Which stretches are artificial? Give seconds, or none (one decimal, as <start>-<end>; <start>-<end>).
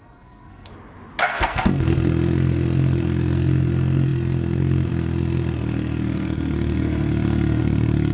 0.0-0.7; 1.2-8.1